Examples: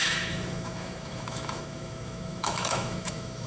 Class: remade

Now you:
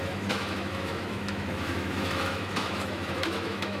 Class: remade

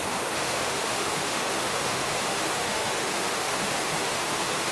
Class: remade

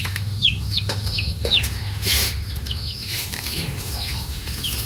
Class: remade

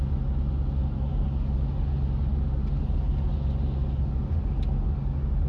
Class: recorded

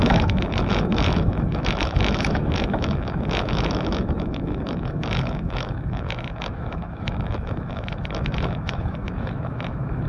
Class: remade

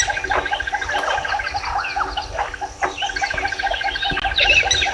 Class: recorded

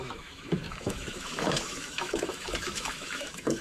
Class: remade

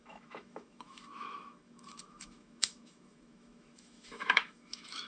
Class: remade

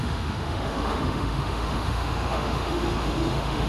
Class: remade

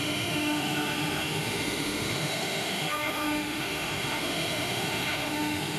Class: remade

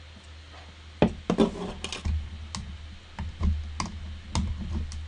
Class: recorded